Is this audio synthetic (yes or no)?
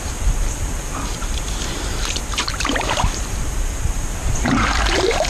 yes